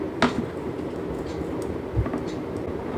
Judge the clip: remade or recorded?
recorded